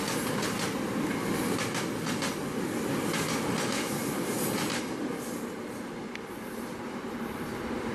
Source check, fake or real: real